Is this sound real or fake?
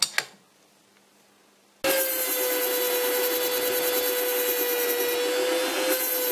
real